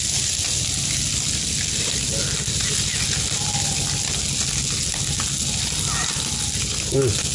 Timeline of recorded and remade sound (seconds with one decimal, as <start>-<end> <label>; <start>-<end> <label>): 0.0-7.3 recorded